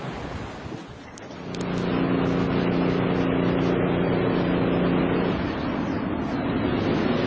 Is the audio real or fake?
real